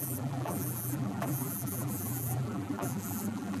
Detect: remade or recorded remade